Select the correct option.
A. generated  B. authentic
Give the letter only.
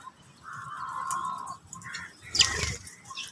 B